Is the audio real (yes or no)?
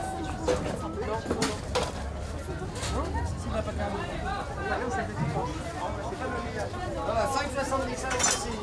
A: yes